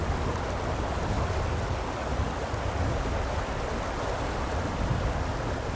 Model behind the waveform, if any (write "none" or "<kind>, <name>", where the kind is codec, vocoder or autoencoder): none